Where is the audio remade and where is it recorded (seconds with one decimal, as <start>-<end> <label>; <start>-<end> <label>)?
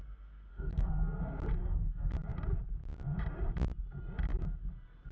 0.0-0.5 recorded; 0.5-1.2 remade; 1.2-1.6 recorded; 1.6-2.1 remade; 2.1-5.1 recorded